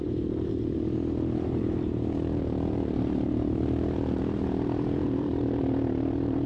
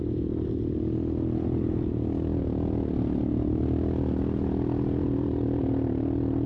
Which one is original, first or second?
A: second